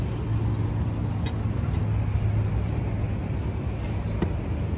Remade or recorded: recorded